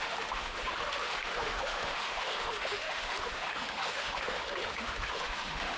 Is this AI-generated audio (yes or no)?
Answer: yes